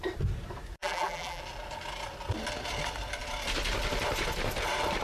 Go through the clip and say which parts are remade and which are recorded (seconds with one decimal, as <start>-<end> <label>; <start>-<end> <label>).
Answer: 0.0-0.8 recorded; 0.8-1.4 remade; 1.4-5.0 recorded